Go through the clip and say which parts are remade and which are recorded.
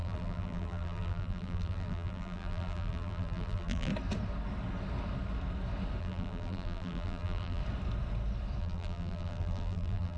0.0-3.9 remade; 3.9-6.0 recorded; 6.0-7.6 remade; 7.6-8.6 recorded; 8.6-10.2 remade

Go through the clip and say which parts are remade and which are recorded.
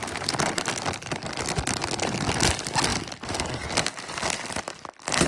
0.0-5.3 recorded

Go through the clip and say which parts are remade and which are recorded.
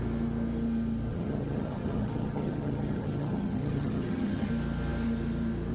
0.0-1.1 recorded; 1.1-4.5 remade; 4.5-5.7 recorded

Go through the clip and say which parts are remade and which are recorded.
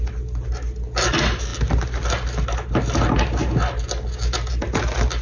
0.0-5.2 recorded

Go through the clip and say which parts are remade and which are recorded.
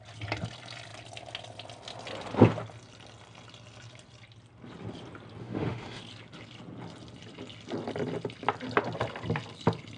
0.0-5.4 recorded; 5.4-6.0 remade; 6.0-10.0 recorded